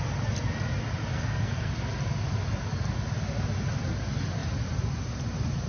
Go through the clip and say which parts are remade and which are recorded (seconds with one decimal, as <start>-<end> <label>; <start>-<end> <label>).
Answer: 0.0-1.1 recorded; 1.1-1.7 remade; 1.7-5.7 recorded